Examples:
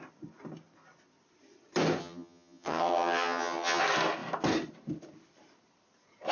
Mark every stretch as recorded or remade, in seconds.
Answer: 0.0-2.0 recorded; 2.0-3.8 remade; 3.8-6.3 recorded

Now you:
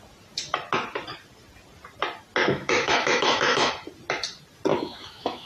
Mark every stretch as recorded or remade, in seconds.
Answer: 0.0-2.4 recorded; 2.4-3.7 remade; 3.7-4.7 recorded; 4.7-5.5 remade

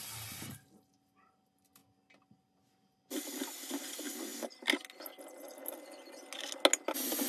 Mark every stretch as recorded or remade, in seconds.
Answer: 0.0-7.3 recorded